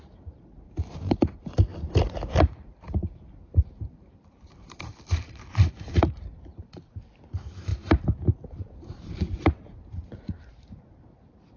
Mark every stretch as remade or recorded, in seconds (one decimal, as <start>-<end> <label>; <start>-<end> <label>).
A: 0.0-1.7 remade; 1.7-2.4 recorded; 2.4-4.9 remade; 4.9-5.9 recorded; 5.9-11.6 remade